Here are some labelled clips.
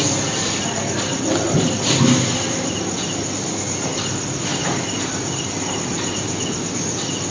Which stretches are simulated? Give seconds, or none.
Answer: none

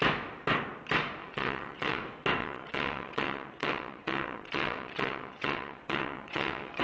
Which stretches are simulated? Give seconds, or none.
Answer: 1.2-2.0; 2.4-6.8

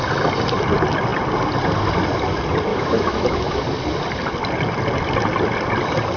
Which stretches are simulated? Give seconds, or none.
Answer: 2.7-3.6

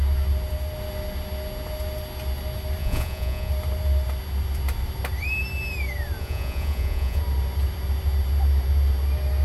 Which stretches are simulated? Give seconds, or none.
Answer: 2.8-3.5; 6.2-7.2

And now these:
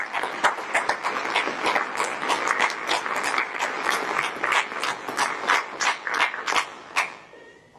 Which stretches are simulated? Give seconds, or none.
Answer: 0.0-0.4; 1.0-7.8

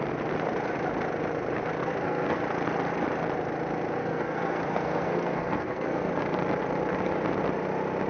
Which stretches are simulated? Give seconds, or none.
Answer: 1.8-2.4; 4.0-6.1